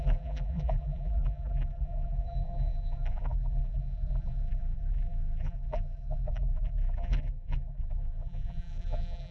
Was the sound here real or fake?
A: fake